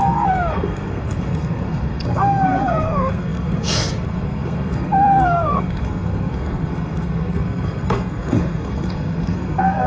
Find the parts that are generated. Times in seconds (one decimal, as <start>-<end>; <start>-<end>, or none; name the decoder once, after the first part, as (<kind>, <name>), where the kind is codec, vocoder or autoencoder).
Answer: 0.0-9.9 (codec, SNAC)